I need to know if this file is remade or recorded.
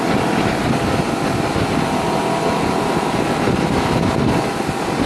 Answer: recorded